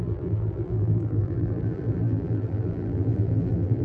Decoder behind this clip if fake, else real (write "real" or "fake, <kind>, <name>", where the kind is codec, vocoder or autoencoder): fake, vocoder, BigVGAN v2